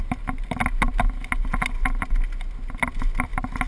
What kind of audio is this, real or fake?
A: real